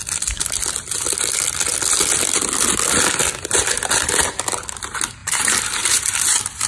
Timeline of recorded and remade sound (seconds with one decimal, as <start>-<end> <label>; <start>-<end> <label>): 0.0-5.2 recorded; 5.2-6.0 remade; 6.0-6.7 recorded